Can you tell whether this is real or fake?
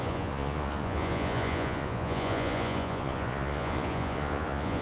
fake